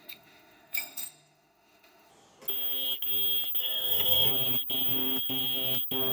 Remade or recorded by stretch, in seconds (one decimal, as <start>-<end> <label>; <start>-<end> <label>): 0.0-2.1 remade; 2.1-3.6 recorded; 3.6-4.3 remade; 4.3-6.1 recorded